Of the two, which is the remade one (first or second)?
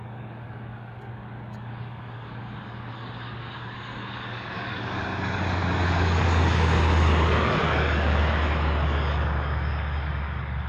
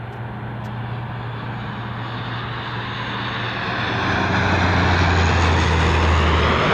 first